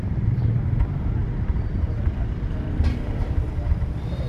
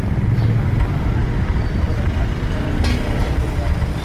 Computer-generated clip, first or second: first